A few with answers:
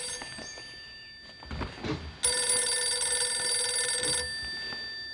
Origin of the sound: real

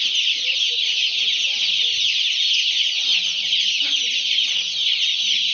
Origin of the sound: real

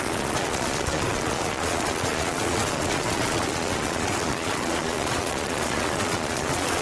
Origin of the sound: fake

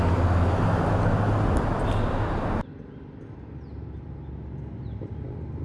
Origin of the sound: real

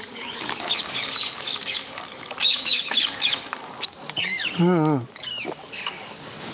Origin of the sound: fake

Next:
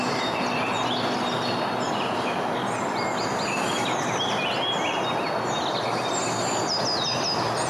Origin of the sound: real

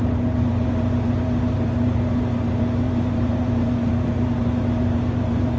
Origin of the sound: fake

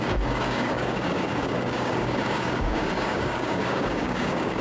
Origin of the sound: fake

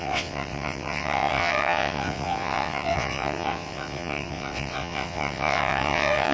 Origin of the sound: fake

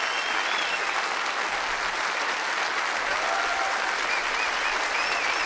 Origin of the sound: real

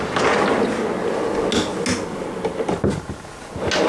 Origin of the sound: real